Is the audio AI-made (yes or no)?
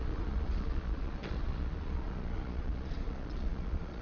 yes